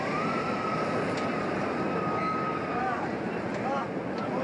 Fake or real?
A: real